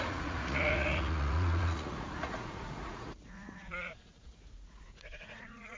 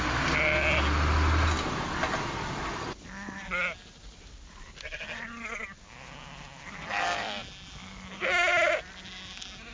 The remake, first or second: first